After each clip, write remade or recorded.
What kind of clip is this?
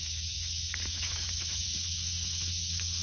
remade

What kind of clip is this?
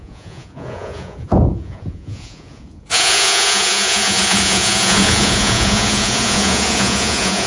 remade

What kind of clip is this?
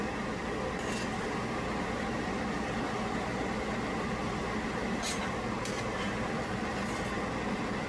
recorded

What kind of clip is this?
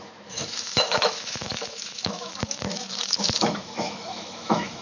remade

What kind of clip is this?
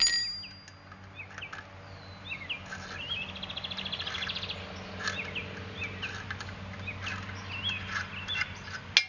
recorded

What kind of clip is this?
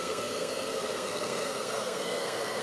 remade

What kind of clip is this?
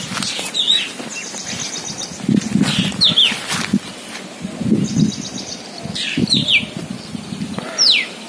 recorded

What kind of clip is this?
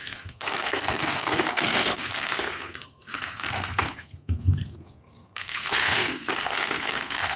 remade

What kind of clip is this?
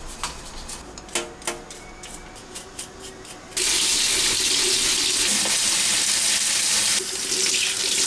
recorded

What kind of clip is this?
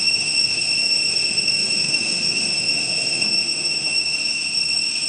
remade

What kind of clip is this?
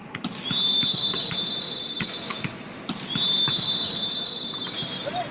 recorded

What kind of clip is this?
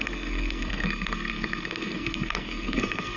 remade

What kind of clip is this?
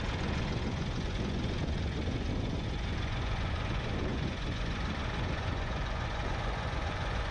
remade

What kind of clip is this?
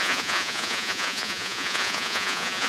remade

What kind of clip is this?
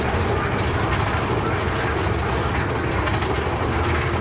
recorded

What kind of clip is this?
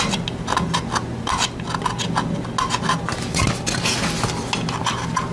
recorded